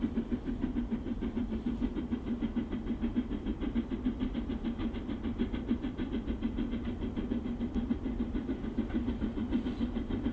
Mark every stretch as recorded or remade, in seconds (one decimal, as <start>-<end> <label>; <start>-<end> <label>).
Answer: 0.0-10.3 recorded